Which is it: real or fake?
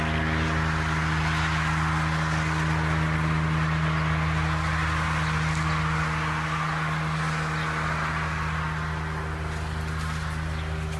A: real